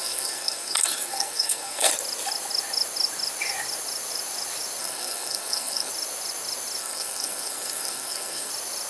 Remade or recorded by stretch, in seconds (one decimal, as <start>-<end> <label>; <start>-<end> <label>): 0.0-1.9 remade; 1.9-4.8 recorded; 4.8-5.9 remade; 5.9-6.8 recorded; 6.8-8.5 remade; 8.5-8.9 recorded